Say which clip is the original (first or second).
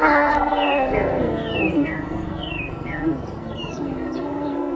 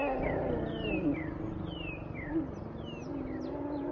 second